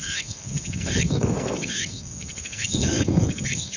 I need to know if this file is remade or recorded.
remade